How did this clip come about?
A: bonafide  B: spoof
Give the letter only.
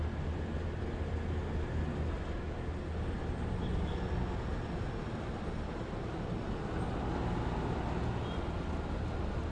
A